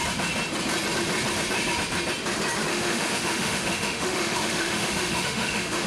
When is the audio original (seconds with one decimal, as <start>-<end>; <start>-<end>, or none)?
0.0-2.7